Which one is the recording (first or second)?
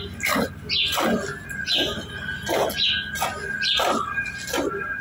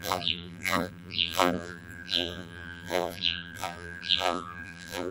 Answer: first